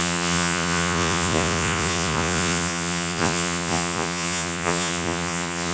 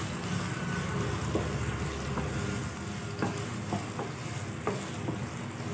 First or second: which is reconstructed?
first